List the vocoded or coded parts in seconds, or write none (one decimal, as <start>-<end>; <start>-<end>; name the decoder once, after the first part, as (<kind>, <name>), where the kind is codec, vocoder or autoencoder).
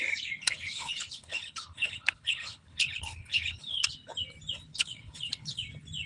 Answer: 0.4-3.9 (codec, HILCodec); 4.7-5.6